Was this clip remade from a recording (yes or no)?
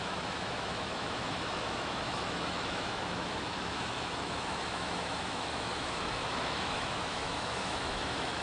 yes